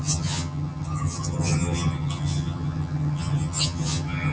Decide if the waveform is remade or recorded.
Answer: remade